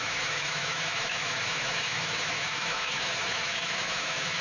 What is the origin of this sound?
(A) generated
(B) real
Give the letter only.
A